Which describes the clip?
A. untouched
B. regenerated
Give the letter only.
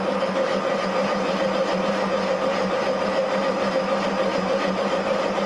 A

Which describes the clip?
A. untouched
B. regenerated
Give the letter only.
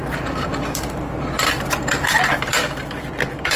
B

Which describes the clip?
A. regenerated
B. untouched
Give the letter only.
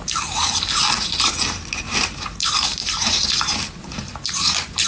A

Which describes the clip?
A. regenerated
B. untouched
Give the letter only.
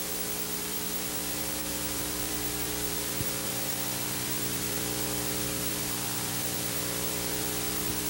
A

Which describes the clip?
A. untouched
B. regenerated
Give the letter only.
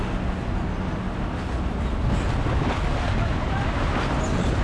A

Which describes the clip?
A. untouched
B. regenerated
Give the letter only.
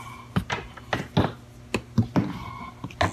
A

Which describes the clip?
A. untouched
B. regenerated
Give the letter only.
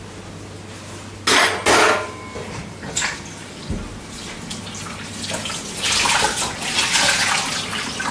A